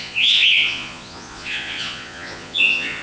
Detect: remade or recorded remade